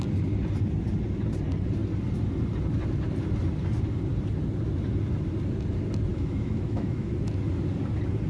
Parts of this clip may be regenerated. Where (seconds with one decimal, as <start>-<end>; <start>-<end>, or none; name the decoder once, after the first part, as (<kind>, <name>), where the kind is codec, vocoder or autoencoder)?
6.1-7.1 (autoencoder, DAC-VAE)